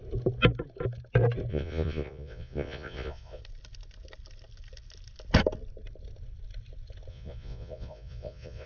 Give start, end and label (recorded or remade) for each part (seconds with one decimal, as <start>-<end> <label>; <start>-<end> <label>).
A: 0.0-1.5 recorded; 1.5-3.4 remade; 3.4-7.1 recorded; 7.1-8.7 remade